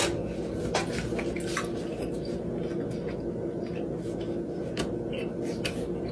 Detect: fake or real real